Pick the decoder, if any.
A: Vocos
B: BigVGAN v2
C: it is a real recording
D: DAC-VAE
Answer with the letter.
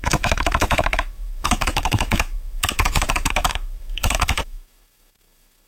D